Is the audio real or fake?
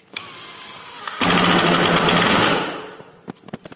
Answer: real